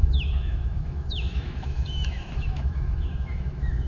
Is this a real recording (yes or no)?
no